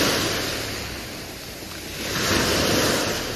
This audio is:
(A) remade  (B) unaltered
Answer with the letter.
B